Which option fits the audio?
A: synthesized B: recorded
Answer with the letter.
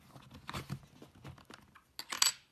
B